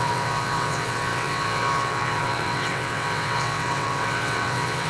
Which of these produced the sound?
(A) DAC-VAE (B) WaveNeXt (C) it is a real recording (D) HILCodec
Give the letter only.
B